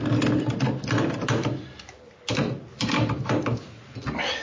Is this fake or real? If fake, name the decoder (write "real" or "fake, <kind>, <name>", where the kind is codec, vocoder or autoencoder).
real